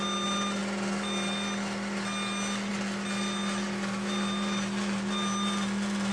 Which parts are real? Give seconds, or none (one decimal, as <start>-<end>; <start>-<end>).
0.0-6.1